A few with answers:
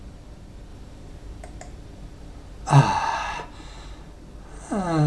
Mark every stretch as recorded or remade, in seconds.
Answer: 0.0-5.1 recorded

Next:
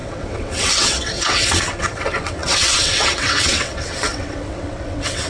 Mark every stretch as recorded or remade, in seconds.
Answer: 0.0-5.3 remade

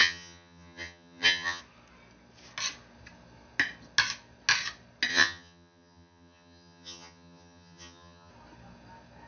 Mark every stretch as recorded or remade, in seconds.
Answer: 0.0-1.6 remade; 1.6-5.1 recorded; 5.1-8.3 remade; 8.3-9.3 recorded

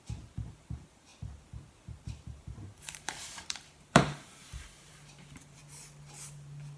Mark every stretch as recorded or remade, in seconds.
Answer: 0.0-1.1 remade; 1.1-1.6 recorded; 1.6-5.6 remade; 5.6-6.8 recorded